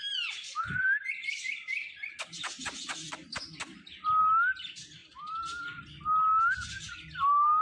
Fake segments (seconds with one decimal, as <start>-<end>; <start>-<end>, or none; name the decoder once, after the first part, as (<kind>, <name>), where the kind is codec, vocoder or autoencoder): none

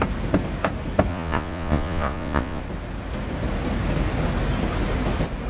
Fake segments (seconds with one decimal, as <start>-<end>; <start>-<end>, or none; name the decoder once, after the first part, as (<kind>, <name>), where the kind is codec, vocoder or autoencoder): 1.1-2.6 (vocoder, Vocos)